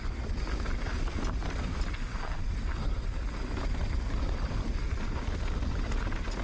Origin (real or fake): real